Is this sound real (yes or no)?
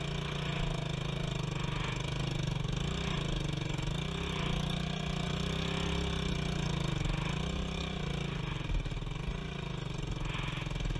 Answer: yes